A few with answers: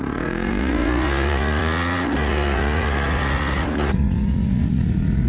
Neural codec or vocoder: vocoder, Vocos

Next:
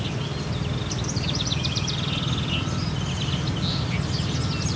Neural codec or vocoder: none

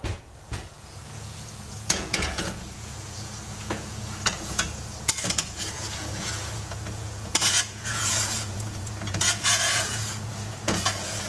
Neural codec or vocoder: vocoder, Vocos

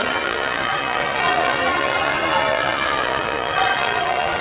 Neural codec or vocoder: vocoder, Vocos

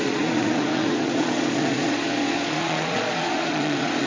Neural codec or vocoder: vocoder, Vocos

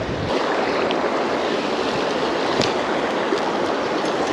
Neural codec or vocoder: none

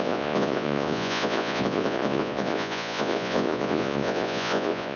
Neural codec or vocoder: vocoder, Vocos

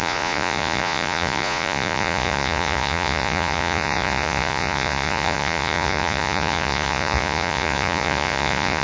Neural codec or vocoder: vocoder, Vocos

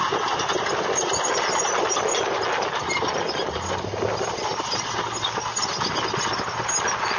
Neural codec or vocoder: none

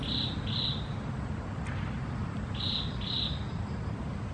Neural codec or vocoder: none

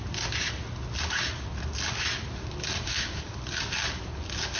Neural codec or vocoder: none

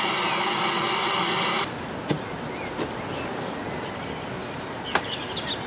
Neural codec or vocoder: none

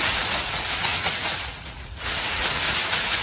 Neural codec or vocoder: vocoder, Vocos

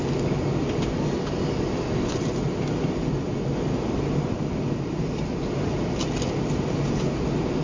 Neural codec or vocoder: none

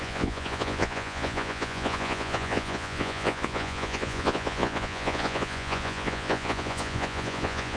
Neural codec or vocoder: vocoder, Vocos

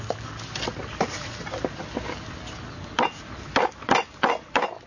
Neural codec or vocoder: none